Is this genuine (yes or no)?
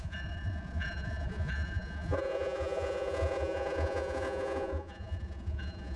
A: no